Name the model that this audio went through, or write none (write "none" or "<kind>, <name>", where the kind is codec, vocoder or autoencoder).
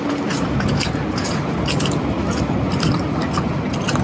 none